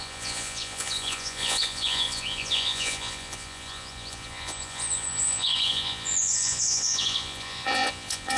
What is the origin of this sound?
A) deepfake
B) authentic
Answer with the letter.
A